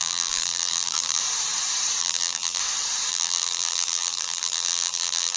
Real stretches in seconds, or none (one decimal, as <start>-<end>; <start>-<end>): 1.2-2.0; 2.6-3.1